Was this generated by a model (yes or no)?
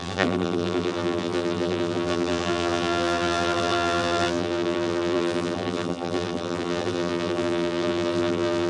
yes